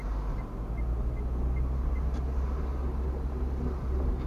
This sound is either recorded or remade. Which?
recorded